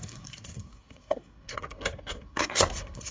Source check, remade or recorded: remade